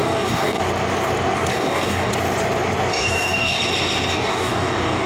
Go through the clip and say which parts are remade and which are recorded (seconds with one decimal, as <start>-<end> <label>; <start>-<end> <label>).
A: 0.0-0.6 remade; 0.6-1.5 recorded; 1.5-2.1 remade; 2.1-2.9 recorded; 2.9-3.6 remade; 3.6-4.1 recorded; 4.1-5.1 remade